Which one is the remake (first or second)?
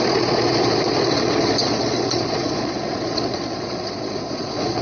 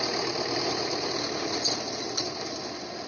first